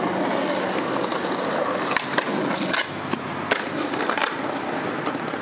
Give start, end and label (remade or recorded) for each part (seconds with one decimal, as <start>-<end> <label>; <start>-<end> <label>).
0.0-5.4 recorded